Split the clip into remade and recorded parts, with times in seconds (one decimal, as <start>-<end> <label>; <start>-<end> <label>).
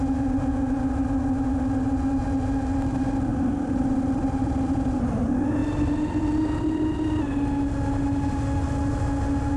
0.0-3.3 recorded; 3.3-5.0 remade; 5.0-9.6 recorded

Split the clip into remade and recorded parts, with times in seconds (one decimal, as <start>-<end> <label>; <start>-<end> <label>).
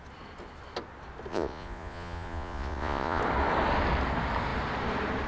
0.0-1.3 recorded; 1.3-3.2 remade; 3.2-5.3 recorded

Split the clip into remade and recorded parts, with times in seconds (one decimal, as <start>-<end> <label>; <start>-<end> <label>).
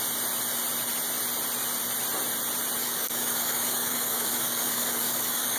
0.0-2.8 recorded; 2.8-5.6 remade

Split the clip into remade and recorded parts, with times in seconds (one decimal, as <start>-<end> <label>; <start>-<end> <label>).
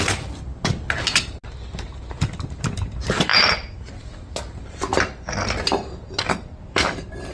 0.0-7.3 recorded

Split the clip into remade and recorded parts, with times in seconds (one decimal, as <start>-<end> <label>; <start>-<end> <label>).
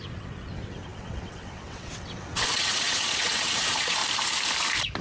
0.0-4.0 remade; 4.0-5.0 recorded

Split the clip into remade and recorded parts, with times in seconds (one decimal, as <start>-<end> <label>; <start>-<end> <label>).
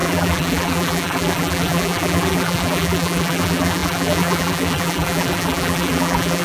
0.0-6.4 remade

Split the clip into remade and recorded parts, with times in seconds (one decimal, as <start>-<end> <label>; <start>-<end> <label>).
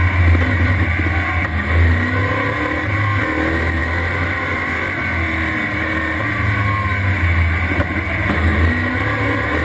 0.0-9.6 recorded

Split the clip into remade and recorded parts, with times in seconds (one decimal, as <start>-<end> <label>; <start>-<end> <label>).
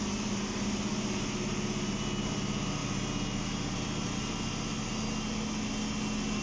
0.0-6.4 recorded